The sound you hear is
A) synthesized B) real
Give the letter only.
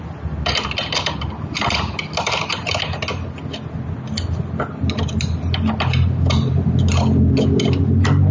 B